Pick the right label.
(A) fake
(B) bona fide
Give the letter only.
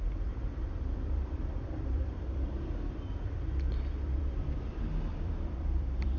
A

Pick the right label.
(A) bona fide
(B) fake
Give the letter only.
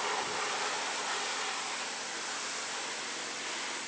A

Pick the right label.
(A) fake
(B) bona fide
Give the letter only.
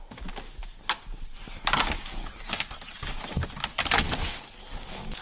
B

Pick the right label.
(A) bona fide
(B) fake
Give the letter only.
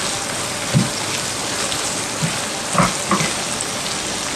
A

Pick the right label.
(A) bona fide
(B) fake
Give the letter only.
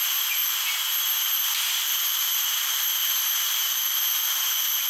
B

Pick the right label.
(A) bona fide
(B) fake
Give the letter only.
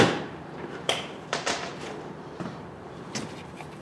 B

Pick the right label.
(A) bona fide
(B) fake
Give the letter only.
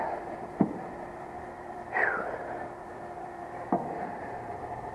B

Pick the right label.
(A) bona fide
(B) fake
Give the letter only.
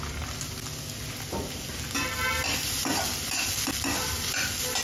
A